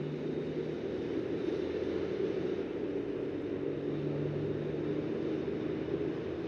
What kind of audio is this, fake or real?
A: real